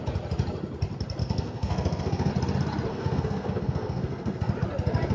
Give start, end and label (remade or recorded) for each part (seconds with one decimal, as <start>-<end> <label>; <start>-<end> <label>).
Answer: 0.0-1.2 recorded; 1.2-2.3 remade; 2.3-2.9 recorded; 2.9-4.5 remade; 4.5-5.1 recorded